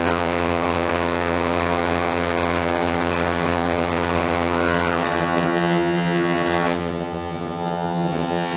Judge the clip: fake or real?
fake